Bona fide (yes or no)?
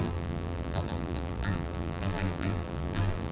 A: no